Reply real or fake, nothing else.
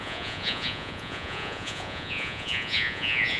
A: fake